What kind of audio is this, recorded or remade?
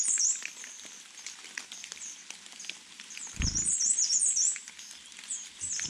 recorded